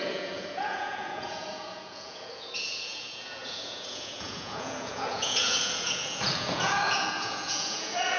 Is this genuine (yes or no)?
no